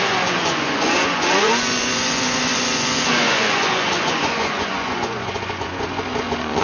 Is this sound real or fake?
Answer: fake